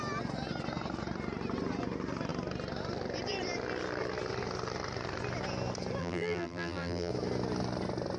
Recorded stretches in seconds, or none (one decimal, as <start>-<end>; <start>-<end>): 0.0-6.0; 7.1-8.2